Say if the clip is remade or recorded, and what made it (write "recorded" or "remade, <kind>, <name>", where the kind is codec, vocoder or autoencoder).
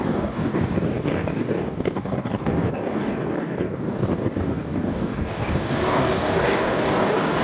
remade, codec, DAC